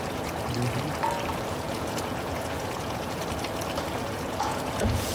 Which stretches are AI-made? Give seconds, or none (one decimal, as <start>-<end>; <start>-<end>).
0.0-0.5; 1.5-3.2; 4.0-5.1